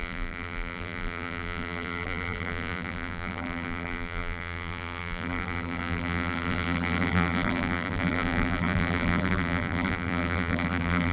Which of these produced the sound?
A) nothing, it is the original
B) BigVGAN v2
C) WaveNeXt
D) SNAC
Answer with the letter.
B